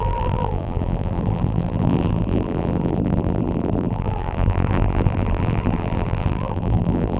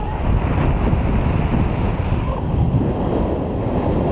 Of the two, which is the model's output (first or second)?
first